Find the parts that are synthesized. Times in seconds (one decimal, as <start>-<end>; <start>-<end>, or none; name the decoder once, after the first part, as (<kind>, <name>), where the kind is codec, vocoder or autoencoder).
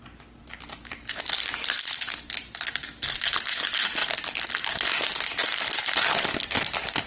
0.7-1.2 (autoencoder, DAC-VAE)